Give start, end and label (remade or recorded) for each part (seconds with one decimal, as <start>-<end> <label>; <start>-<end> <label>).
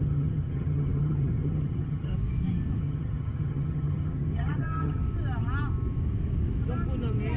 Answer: 0.0-2.1 remade; 2.1-2.8 recorded; 2.8-5.0 remade; 5.0-7.4 recorded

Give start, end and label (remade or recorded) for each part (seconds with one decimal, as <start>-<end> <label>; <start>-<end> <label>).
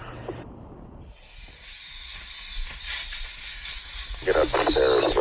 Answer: 0.0-5.2 recorded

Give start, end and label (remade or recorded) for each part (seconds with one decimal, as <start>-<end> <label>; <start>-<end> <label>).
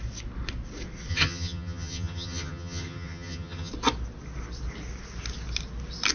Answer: 0.0-1.1 recorded; 1.1-3.7 remade; 3.7-6.1 recorded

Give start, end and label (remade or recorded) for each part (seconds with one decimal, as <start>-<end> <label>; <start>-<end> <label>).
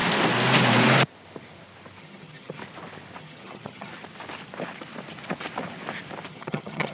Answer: 0.0-2.0 recorded; 2.0-2.6 remade; 2.6-3.2 recorded; 3.2-3.9 remade; 3.9-6.3 recorded; 6.3-6.9 remade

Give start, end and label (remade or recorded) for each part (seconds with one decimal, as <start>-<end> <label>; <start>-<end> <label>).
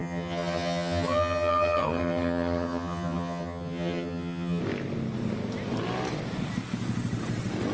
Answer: 0.0-4.6 remade; 4.6-7.7 recorded